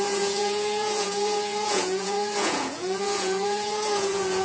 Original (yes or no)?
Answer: no